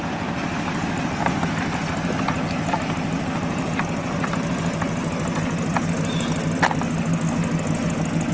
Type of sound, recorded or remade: recorded